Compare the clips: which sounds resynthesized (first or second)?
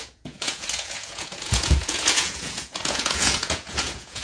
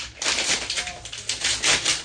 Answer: first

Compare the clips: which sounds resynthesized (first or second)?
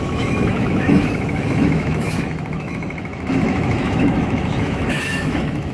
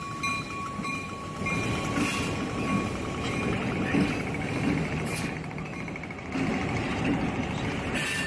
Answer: first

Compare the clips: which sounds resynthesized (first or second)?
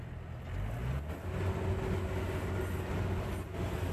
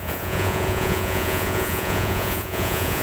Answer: second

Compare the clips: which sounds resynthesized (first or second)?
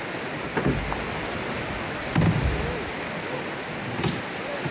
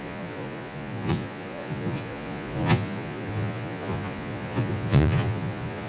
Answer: second